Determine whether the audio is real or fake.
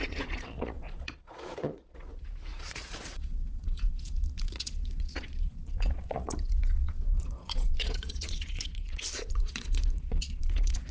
fake